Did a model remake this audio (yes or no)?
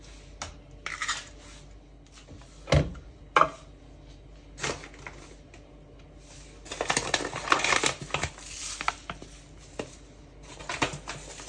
no